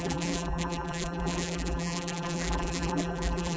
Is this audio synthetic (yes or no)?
yes